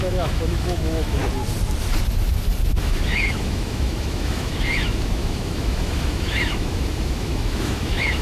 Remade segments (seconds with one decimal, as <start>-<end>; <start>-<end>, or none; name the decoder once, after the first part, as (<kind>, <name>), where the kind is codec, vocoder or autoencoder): 0.0-1.2 (autoencoder, DAC-VAE); 2.8-8.2